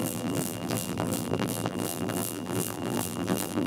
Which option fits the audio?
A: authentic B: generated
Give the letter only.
B